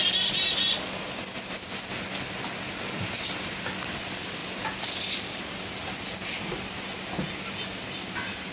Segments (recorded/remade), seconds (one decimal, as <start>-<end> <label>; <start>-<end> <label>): 0.0-0.7 remade; 0.7-8.5 recorded